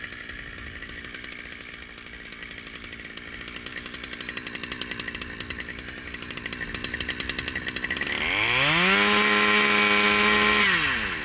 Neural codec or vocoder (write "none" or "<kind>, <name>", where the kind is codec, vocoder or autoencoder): none